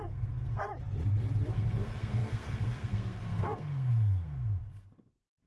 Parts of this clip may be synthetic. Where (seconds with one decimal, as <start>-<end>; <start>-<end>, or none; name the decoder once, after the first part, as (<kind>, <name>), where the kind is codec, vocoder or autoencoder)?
0.0-0.7 (codec, SNAC); 1.5-5.5